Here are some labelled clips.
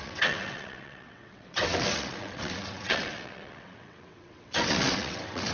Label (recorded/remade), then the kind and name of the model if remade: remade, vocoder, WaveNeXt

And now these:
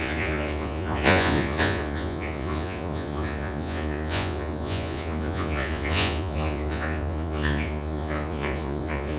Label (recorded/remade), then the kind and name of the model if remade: remade, vocoder, Vocos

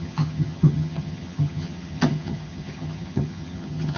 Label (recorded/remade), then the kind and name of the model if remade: remade, vocoder, HiFi-GAN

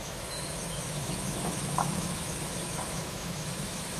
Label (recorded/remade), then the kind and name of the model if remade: remade, autoencoder, DAC-VAE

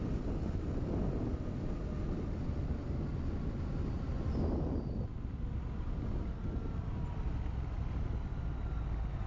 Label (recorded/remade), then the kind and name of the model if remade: recorded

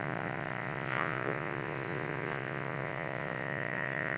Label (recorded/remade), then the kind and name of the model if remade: remade, vocoder, Vocos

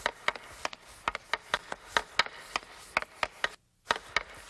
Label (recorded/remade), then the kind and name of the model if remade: recorded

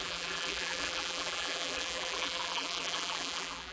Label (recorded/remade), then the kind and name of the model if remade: remade, vocoder, BigVGAN v2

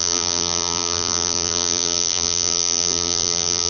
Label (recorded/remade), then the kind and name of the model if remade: remade, vocoder, BigVGAN v2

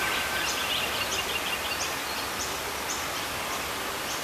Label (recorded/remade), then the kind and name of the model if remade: recorded